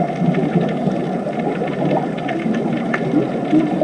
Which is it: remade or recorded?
recorded